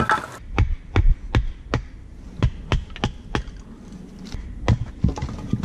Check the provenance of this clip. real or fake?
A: real